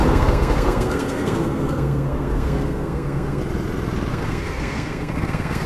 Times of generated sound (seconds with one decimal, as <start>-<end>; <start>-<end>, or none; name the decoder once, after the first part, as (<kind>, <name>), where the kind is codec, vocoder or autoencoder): 0.0-3.4 (codec, SNAC); 4.1-5.7

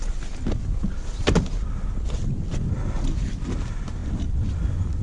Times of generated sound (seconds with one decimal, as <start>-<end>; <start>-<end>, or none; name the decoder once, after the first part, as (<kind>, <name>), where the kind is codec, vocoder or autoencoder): none

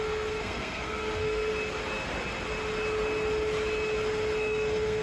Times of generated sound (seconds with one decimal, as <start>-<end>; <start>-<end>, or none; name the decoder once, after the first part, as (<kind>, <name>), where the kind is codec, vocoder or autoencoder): 0.0-1.5 (codec, SNAC); 4.5-5.0